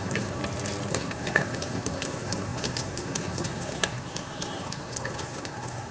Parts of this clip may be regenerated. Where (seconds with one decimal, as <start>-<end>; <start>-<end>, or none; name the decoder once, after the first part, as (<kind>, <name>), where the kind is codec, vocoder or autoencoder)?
0.0-0.4 (codec, SNAC); 0.9-5.9